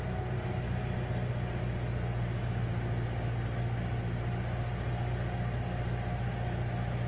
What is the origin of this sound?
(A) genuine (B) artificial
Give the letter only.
A